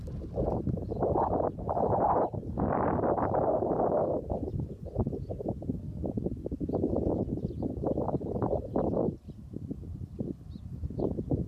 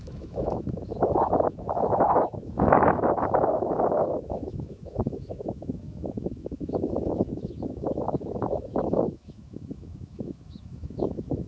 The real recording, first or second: first